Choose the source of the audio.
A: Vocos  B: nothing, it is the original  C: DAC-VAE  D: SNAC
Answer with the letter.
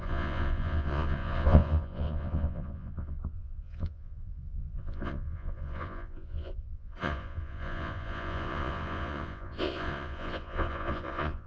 A